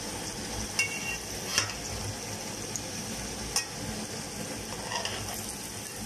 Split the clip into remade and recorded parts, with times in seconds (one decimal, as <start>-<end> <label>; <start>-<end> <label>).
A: 0.0-6.1 recorded